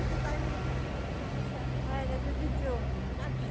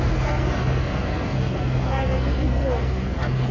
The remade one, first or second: second